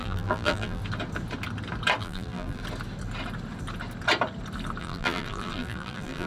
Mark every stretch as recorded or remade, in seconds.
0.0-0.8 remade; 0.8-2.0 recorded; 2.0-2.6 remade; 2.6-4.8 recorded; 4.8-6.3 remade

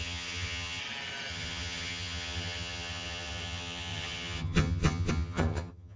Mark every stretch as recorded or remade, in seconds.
0.0-0.8 remade; 0.8-1.3 recorded; 1.3-6.0 remade

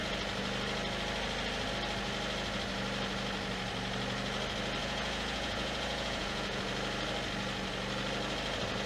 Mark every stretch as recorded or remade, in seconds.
0.0-4.8 recorded; 4.8-6.6 remade; 6.6-8.9 recorded

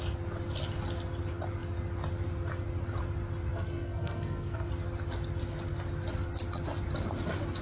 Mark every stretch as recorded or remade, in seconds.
0.0-3.5 recorded; 3.5-4.7 remade; 4.7-7.6 recorded

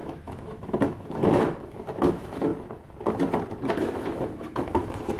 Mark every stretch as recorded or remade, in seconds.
0.0-2.5 remade; 2.5-3.7 recorded; 3.7-5.2 remade